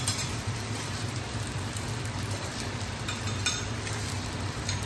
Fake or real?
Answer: fake